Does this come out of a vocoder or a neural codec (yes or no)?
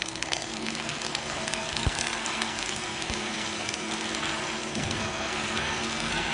yes